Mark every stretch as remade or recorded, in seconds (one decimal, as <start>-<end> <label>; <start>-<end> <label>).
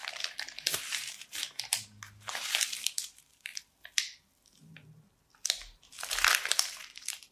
0.0-3.5 remade; 3.5-6.3 recorded; 6.3-7.3 remade